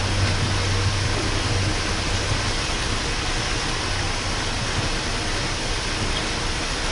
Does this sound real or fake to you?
real